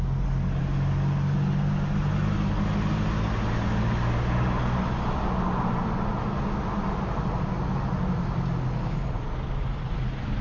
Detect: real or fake real